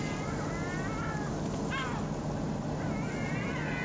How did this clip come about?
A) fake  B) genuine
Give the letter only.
B